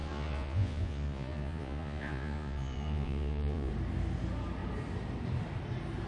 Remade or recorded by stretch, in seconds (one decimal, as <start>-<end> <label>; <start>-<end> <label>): 0.0-3.7 remade; 3.7-6.1 recorded